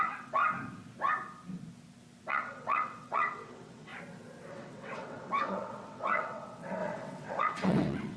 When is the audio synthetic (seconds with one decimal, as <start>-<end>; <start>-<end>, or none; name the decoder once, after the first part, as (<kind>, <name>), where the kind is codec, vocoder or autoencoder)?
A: 0.0-0.4 (vocoder, WaveNeXt); 2.3-3.9; 4.5-8.2